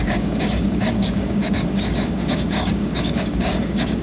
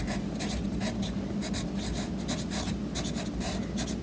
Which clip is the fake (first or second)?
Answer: first